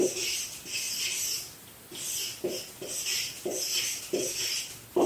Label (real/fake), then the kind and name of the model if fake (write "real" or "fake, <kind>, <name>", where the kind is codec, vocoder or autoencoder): real